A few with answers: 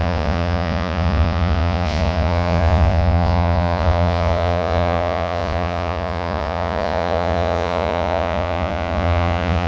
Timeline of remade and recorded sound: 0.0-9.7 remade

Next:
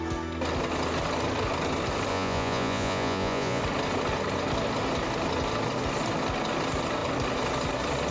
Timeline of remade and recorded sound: 0.0-2.1 recorded; 2.1-3.6 remade; 3.6-8.1 recorded